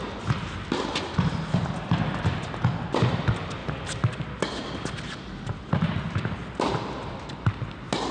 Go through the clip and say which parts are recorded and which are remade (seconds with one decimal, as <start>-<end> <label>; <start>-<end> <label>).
0.0-8.1 recorded